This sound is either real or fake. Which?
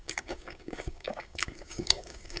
fake